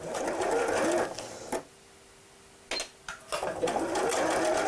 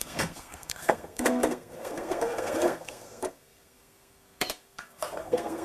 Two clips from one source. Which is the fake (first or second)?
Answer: second